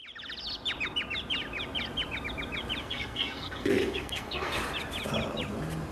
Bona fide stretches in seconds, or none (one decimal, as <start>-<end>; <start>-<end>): 0.0-2.8; 4.6-5.9